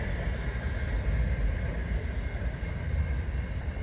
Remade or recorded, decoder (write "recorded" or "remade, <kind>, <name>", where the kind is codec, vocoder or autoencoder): recorded